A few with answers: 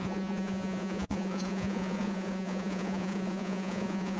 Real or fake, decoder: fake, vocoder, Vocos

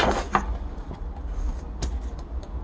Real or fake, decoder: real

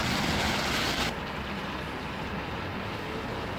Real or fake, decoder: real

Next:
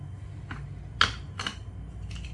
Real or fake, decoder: real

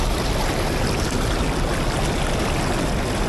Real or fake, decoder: real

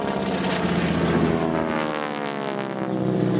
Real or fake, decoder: real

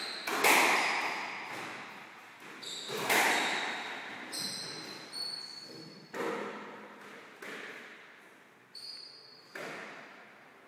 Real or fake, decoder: real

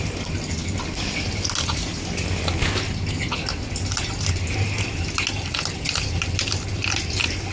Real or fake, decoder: real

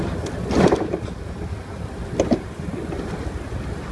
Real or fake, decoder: fake, vocoder, BigVGAN v2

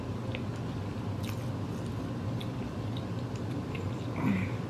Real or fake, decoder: real